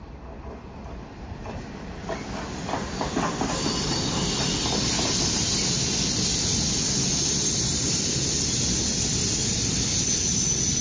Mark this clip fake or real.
real